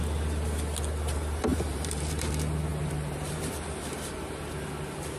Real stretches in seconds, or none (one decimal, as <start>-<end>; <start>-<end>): 0.0-1.5; 2.3-2.7; 4.2-5.2